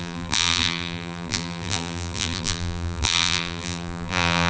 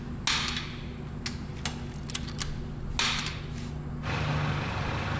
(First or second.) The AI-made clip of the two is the first